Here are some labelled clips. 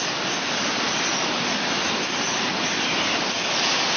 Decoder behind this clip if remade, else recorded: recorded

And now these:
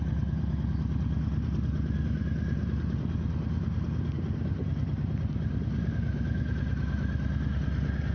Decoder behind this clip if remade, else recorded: recorded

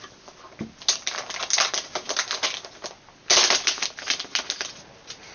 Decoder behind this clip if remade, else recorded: recorded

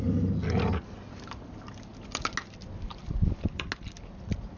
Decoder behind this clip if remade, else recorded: recorded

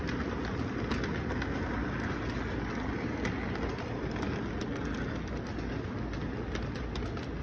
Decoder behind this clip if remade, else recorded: recorded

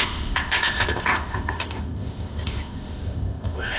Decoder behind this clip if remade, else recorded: remade, codec, ZipCodec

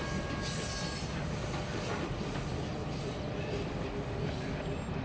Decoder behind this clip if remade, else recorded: recorded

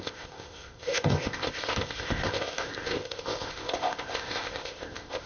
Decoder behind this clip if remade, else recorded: remade, codec, ZipCodec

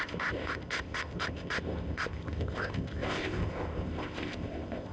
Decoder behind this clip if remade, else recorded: remade, codec, ZipCodec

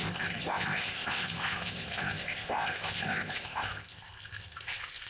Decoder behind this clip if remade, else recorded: remade, codec, ZipCodec